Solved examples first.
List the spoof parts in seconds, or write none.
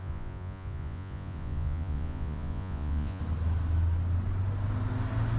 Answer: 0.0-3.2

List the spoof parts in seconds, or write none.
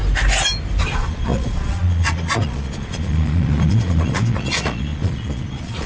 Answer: 0.8-5.9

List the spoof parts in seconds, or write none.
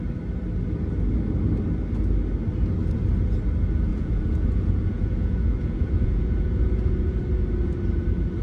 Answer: 3.9-7.2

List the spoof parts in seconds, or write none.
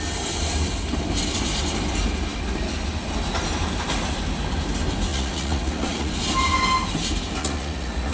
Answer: 5.1-6.1; 7.4-8.1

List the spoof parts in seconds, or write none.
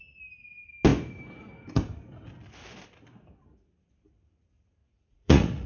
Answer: 4.8-5.7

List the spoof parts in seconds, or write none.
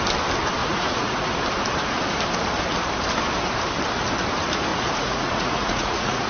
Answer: 0.6-1.3; 4.7-6.3